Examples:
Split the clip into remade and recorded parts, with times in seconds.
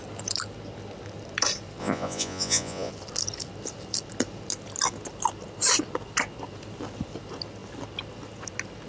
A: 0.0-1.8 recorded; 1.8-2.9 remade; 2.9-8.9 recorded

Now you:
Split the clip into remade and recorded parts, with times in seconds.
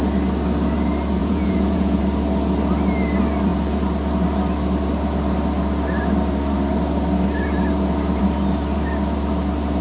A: 0.0-1.2 recorded; 1.2-2.0 remade; 2.0-9.8 recorded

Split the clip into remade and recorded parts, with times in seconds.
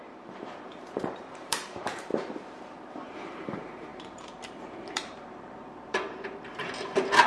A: 0.0-2.1 remade; 2.1-2.9 recorded; 2.9-7.3 remade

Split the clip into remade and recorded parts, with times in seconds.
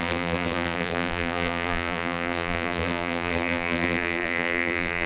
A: 0.0-5.1 remade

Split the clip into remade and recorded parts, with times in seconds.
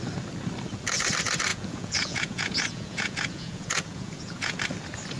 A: 0.0-1.5 recorded; 1.5-4.6 remade; 4.6-5.2 recorded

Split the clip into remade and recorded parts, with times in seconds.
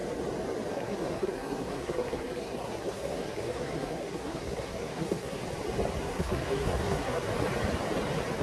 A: 0.0-0.7 recorded; 0.7-5.4 remade; 5.4-6.0 recorded; 6.0-7.3 remade; 7.3-8.4 recorded